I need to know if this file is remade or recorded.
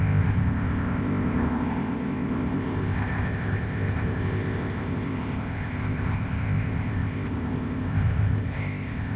remade